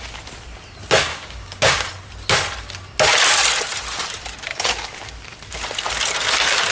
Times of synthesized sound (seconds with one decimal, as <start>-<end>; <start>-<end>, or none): 1.1-1.9